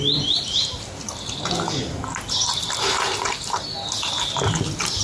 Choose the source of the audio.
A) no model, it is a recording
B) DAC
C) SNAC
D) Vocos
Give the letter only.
A